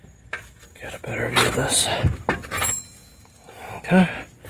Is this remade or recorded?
recorded